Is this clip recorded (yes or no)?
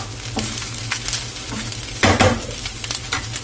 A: yes